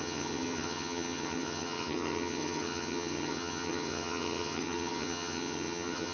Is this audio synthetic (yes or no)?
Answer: yes